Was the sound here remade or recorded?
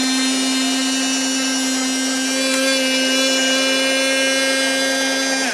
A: recorded